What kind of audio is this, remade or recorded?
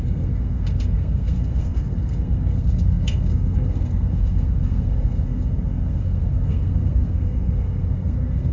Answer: remade